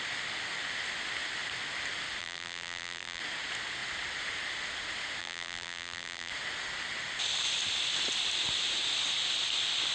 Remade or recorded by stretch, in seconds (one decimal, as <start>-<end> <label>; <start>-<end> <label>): 0.0-2.2 recorded; 2.2-3.2 remade; 3.2-5.2 recorded; 5.2-6.3 remade; 6.3-9.9 recorded